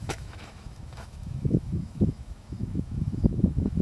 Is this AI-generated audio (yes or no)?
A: yes